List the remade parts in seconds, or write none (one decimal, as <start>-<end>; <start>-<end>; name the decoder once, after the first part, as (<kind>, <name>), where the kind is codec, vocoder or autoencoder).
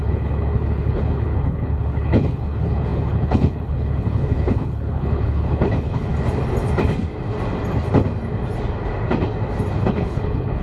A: 0.0-6.1 (codec, HILCodec); 9.9-10.6